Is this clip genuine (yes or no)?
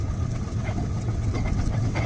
no